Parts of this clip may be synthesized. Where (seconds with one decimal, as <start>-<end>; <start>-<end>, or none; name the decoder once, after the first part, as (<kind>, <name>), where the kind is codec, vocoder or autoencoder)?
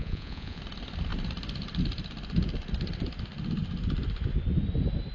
0.0-0.6 (vocoder, Vocos)